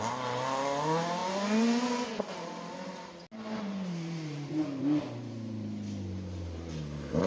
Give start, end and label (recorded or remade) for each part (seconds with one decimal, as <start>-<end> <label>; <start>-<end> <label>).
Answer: 0.0-7.3 recorded

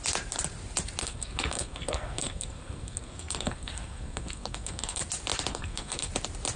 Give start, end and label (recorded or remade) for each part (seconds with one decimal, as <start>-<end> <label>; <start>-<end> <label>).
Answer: 0.0-1.0 recorded; 1.0-5.0 remade; 5.0-5.5 recorded; 5.5-6.1 remade; 6.1-6.6 recorded

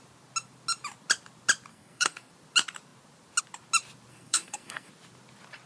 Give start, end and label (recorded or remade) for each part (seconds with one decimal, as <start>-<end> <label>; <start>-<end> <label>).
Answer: 0.0-1.7 recorded; 1.7-2.3 remade; 2.3-4.1 recorded; 4.1-4.9 remade; 4.9-5.7 recorded

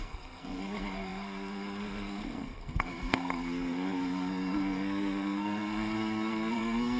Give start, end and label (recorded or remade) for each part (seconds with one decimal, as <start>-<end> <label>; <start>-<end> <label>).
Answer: 0.0-7.0 remade

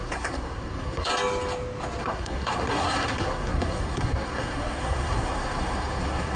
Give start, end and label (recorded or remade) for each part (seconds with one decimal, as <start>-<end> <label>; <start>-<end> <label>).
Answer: 0.0-1.1 remade; 1.1-2.0 recorded; 2.0-6.4 remade

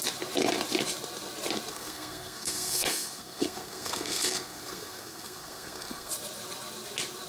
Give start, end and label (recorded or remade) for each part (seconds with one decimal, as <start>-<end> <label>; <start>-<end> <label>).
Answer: 0.0-1.7 recorded; 1.7-6.1 remade; 6.1-7.3 recorded

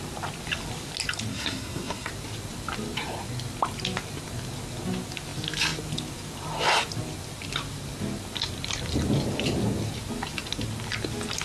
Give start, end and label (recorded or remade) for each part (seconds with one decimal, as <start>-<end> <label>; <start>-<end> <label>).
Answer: 0.0-1.3 recorded; 1.3-2.1 remade; 2.1-11.4 recorded

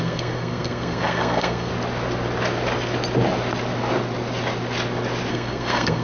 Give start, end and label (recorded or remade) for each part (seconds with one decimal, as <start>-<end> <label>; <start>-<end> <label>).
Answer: 0.0-1.7 remade; 1.7-5.3 recorded; 5.3-6.0 remade